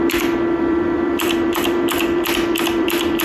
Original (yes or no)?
no